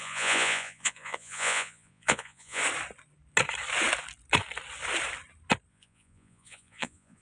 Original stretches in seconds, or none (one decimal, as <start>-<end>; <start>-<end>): 2.6-5.7